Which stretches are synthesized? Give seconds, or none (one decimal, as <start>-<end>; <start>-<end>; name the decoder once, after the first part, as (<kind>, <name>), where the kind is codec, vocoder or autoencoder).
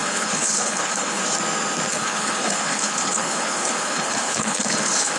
0.0-1.2 (codec, HILCodec); 1.9-5.2